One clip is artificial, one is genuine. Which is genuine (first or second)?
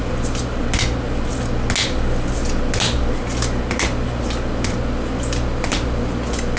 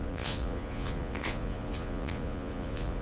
first